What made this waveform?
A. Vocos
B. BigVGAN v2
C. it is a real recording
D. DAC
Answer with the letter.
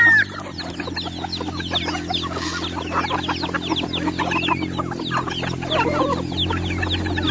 C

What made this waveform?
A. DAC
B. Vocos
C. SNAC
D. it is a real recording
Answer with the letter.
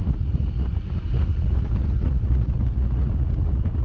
B